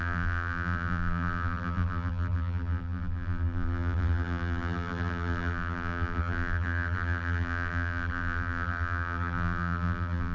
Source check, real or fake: fake